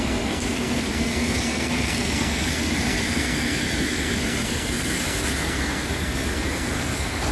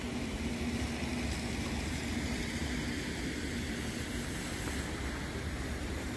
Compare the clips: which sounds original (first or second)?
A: second